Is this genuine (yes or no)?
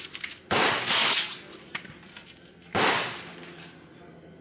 yes